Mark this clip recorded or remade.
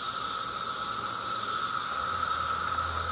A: recorded